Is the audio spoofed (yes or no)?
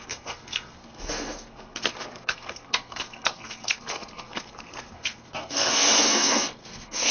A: yes